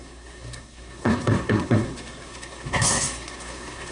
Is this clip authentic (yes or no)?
no